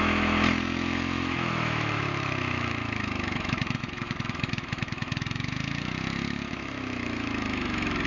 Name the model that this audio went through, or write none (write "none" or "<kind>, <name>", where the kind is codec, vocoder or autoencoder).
autoencoder, DAC-VAE